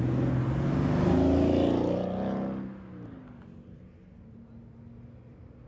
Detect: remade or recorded recorded